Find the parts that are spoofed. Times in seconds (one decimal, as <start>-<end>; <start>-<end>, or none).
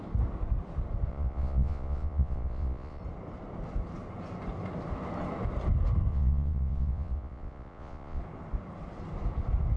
1.1-3.0; 6.1-8.2